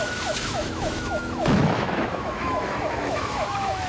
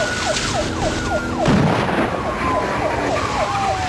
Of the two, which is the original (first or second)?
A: second